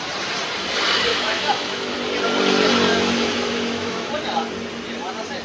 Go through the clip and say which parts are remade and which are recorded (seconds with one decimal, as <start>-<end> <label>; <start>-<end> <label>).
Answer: 0.0-1.1 recorded; 1.1-1.9 remade; 1.9-2.9 recorded; 2.9-4.1 remade; 4.1-5.4 recorded